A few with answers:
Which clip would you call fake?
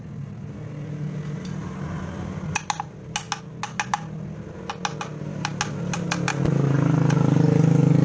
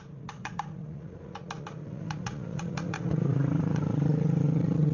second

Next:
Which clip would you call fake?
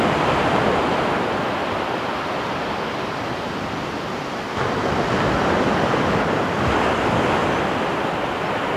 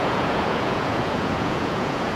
second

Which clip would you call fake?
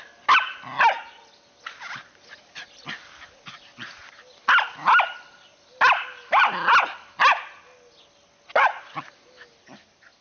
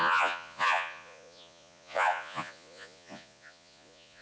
second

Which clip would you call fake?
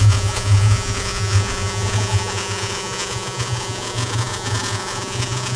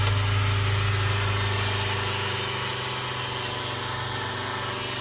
first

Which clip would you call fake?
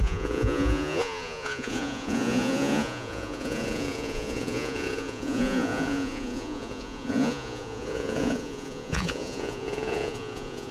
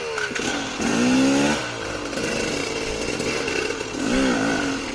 first